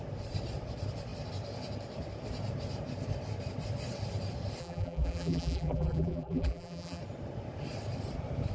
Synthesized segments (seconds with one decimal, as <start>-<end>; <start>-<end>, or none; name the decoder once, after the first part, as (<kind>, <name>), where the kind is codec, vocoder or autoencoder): 4.6-7.0 (vocoder, BigVGAN v2)